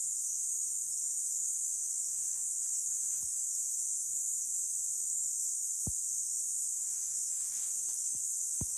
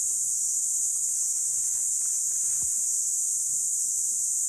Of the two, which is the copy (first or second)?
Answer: first